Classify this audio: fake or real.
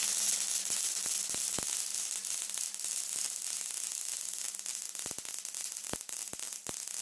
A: real